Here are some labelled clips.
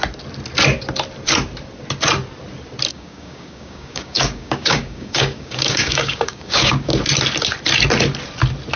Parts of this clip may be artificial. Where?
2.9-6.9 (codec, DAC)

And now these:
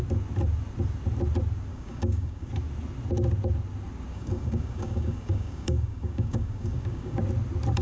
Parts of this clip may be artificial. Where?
1.7-2.5 (codec, DAC); 4.1-7.2